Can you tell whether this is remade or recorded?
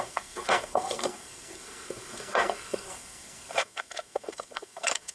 remade